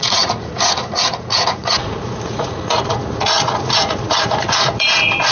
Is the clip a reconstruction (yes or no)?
yes